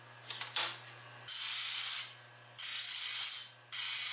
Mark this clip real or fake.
real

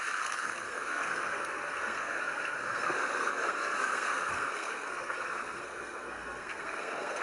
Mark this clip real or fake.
fake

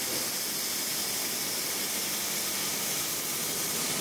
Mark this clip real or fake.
real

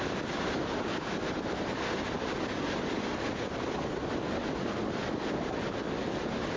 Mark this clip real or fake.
real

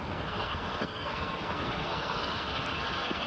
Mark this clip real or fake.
fake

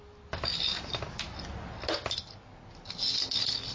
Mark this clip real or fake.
real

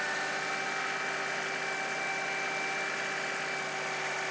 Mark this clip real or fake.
real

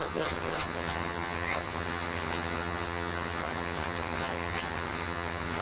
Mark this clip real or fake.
fake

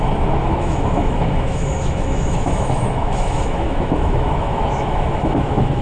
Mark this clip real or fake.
fake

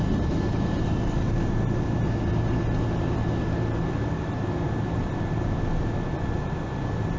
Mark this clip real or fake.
real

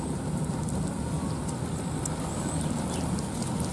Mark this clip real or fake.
real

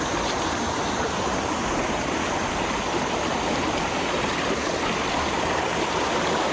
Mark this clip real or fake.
real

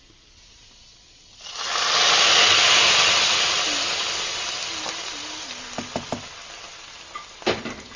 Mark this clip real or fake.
real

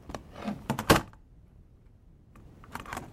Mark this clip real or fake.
fake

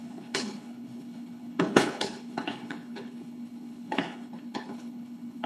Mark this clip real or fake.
fake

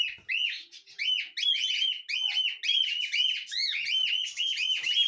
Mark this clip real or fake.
real